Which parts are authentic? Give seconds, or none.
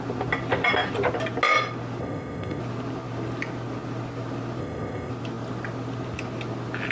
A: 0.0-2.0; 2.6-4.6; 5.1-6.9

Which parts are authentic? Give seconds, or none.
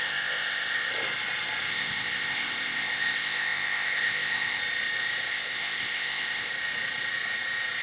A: 0.9-1.7; 4.6-5.3; 6.5-7.8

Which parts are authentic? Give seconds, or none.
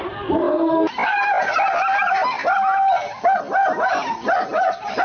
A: 0.0-5.0